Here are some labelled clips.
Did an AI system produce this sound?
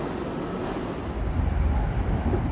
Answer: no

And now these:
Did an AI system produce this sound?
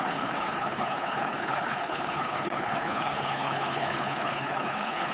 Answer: yes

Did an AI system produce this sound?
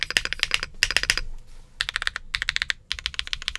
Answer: no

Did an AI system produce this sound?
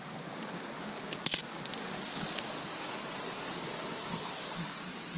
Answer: no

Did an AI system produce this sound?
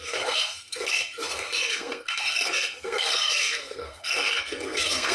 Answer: yes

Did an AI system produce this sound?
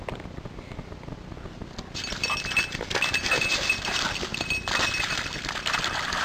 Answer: no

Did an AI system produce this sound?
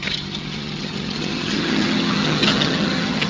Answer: yes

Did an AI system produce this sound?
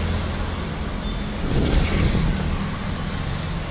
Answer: no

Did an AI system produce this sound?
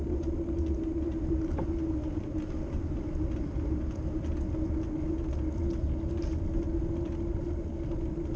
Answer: no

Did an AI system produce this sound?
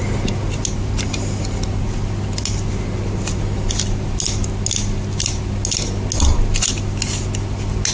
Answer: no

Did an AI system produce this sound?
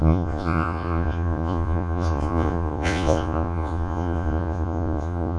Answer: yes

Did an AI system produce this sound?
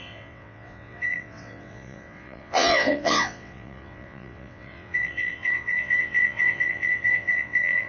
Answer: yes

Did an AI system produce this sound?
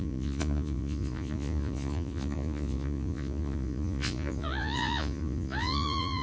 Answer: yes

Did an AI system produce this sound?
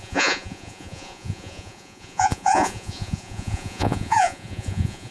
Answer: yes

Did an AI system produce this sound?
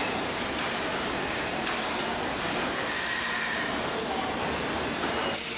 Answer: yes